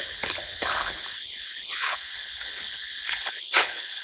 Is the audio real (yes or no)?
no